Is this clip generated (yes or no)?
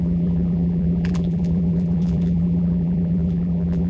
yes